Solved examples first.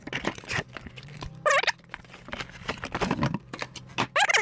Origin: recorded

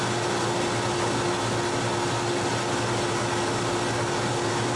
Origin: recorded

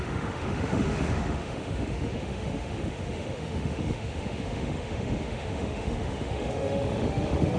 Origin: remade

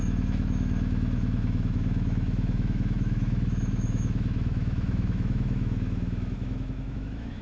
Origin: remade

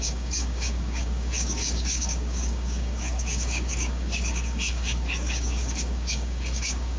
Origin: remade